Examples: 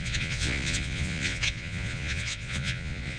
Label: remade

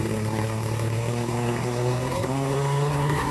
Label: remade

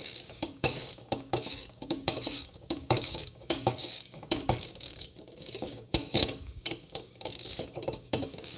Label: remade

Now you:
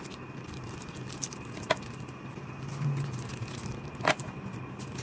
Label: recorded